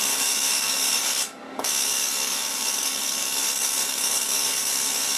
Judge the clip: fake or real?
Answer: fake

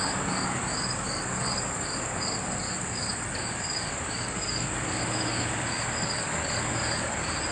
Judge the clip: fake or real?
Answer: fake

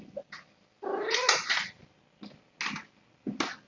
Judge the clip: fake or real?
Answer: real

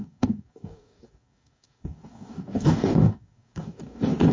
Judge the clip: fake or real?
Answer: fake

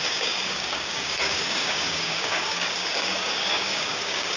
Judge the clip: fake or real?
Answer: fake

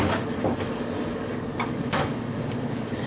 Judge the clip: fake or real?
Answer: fake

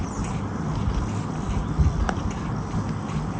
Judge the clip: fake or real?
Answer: real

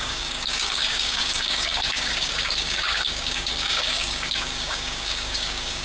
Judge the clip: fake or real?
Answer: fake